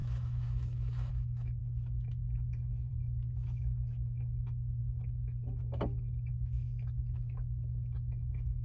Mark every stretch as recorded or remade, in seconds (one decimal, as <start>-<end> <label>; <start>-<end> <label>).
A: 0.0-4.8 remade; 4.8-6.3 recorded; 6.3-8.6 remade